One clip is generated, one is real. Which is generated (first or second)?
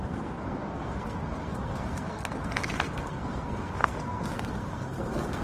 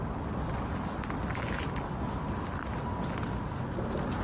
first